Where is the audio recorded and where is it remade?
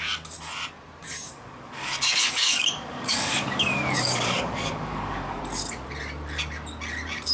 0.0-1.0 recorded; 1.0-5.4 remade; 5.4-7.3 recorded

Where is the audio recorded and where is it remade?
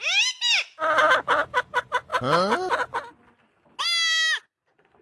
0.0-5.0 recorded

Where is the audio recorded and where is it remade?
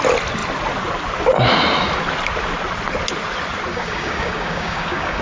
0.0-3.7 recorded; 3.7-5.2 remade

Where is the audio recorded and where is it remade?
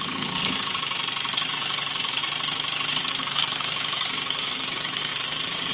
0.0-0.4 remade; 0.4-1.5 recorded; 1.5-2.2 remade; 2.2-3.1 recorded; 3.1-5.7 remade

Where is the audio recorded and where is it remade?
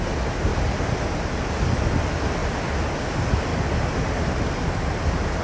0.0-5.4 recorded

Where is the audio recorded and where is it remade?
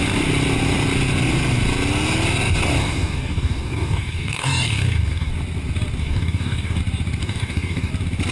0.0-2.8 recorded; 2.8-5.3 remade; 5.3-6.0 recorded; 6.0-6.8 remade; 6.8-7.2 recorded; 7.2-7.9 remade; 7.9-8.3 recorded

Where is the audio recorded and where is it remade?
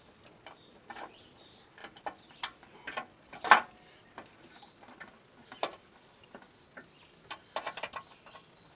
0.0-8.8 recorded